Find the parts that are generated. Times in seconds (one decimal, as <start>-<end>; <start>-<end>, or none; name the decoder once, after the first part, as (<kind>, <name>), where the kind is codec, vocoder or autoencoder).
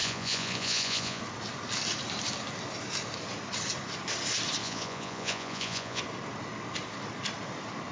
0.0-1.2 (vocoder, Vocos); 4.6-6.0